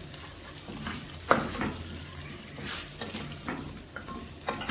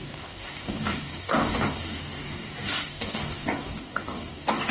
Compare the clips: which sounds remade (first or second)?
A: second